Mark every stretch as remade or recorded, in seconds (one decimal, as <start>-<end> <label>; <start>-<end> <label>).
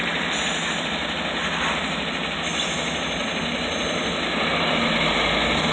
0.0-5.7 recorded